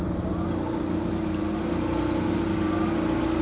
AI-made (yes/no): no